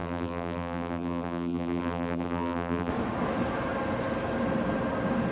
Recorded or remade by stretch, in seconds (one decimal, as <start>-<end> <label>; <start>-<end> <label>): 0.0-2.9 remade; 2.9-5.3 recorded